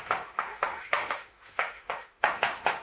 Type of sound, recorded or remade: remade